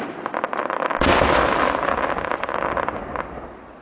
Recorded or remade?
recorded